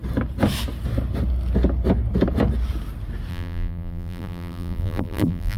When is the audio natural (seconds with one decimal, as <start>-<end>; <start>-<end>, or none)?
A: 0.0-3.3